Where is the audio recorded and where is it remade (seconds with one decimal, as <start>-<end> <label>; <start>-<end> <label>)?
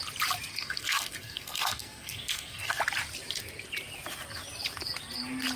0.0-0.5 recorded; 0.5-2.8 remade; 2.8-5.6 recorded